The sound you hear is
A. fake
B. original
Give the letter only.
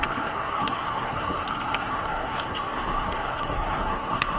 A